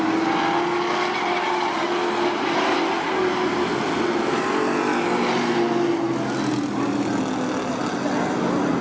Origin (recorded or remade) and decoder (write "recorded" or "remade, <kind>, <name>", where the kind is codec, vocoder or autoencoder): recorded